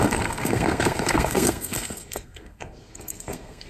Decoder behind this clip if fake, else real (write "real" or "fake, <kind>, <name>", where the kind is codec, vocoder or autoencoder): fake, codec, SNAC